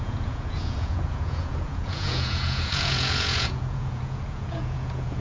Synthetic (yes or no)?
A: yes